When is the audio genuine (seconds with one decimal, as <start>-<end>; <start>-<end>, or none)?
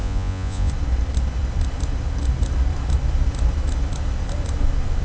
0.7-5.0